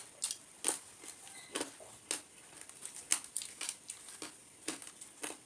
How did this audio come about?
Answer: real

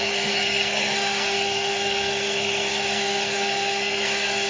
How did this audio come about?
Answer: fake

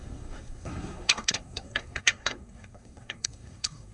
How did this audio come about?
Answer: fake